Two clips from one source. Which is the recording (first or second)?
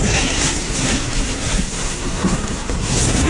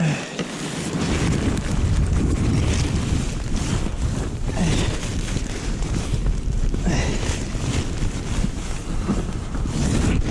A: second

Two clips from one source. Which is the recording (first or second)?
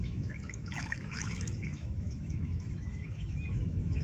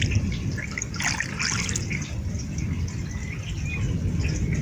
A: second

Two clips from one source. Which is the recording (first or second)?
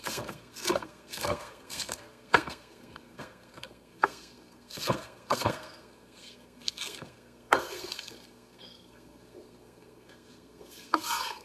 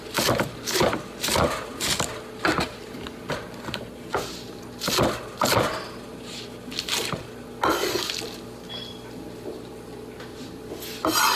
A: second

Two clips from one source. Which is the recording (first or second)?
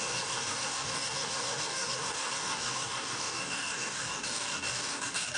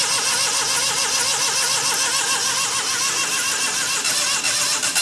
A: second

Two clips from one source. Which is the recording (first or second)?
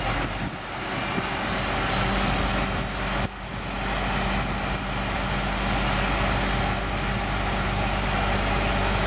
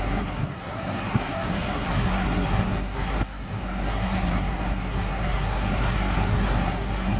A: first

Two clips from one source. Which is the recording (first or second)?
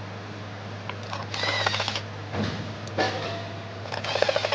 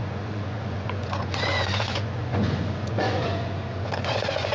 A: first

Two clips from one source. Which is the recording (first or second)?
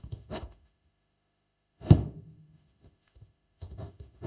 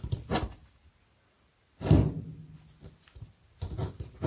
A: second